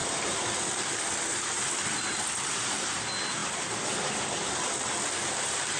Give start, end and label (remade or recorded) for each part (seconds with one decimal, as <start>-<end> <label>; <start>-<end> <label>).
0.0-2.7 remade; 2.7-3.4 recorded; 3.4-4.2 remade; 4.2-5.8 recorded